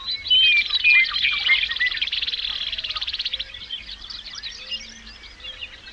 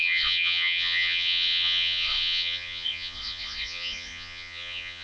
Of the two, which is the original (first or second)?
first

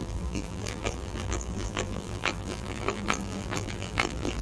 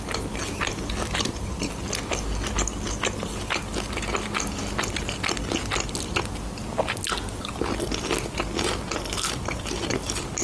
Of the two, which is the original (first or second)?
second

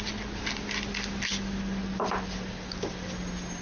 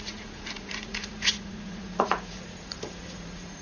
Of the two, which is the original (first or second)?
first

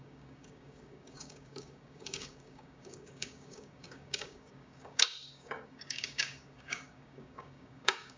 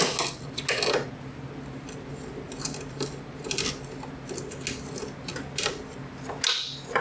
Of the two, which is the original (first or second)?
second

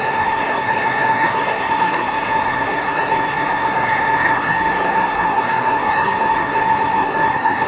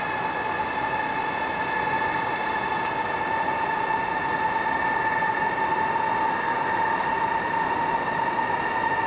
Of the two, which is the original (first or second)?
second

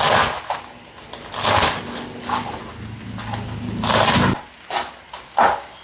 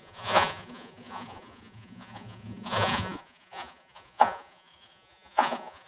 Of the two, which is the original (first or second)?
first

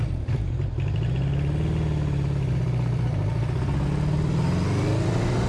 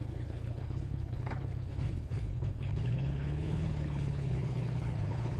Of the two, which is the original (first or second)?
first